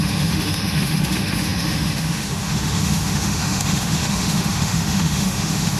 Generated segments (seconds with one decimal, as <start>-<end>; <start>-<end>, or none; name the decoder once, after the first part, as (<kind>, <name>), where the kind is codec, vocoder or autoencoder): 0.0-5.8 (autoencoder, DAC-VAE)